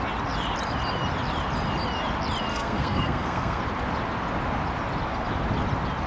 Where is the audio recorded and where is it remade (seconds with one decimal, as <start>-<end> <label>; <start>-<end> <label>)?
0.0-2.5 recorded; 2.5-3.6 remade; 3.6-6.1 recorded